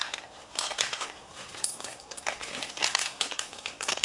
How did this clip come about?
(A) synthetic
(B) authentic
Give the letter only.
A